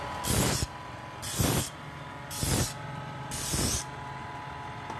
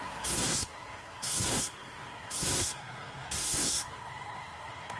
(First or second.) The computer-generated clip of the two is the second